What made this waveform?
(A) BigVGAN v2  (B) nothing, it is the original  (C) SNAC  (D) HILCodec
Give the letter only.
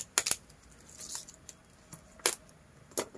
B